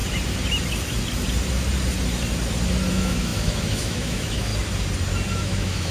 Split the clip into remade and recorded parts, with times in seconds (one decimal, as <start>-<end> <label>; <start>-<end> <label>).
0.0-2.9 recorded; 2.9-4.5 remade; 4.5-5.3 recorded; 5.3-5.9 remade